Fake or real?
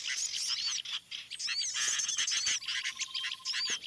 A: real